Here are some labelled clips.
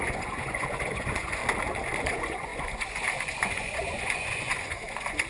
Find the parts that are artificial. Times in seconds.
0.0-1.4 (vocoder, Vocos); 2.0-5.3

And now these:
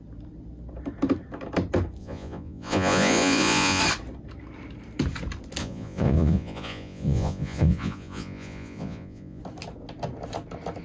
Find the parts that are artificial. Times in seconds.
2.0-3.8 (vocoder, Vocos); 5.6-9.4

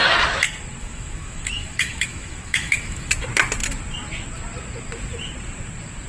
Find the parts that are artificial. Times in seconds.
0.8-3.1 (autoencoder, DAC-VAE)

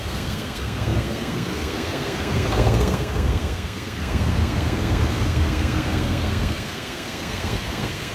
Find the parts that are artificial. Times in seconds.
0.0-8.1 (codec, SNAC)

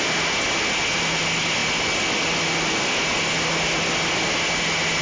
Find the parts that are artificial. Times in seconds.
none